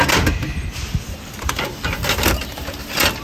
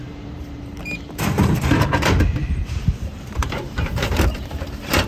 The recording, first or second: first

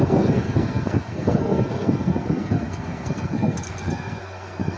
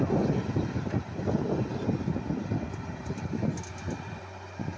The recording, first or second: second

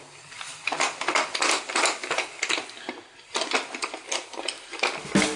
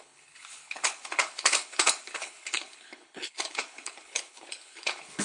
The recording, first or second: first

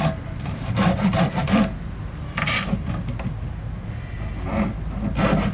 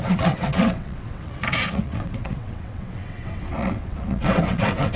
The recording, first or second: first